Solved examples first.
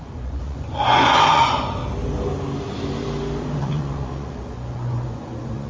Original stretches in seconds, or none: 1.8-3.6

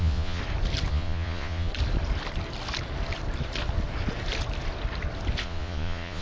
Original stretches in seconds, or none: 0.4-0.9; 1.7-5.4

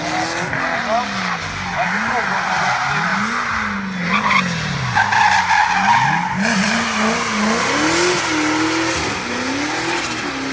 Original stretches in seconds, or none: 0.0-10.5

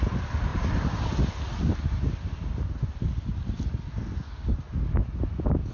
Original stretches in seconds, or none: 0.0-5.7